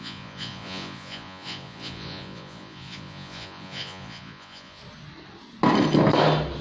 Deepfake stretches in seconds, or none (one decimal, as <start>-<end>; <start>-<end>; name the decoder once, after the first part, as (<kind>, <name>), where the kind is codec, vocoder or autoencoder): 0.0-4.8 (vocoder, Vocos)